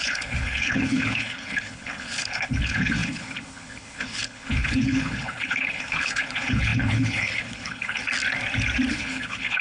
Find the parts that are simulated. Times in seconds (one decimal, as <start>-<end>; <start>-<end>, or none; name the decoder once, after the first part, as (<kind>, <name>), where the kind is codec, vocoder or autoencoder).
0.0-8.0 (codec, HILCodec); 8.9-9.6